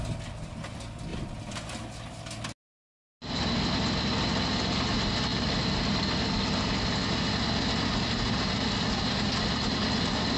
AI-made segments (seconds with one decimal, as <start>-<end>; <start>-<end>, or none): none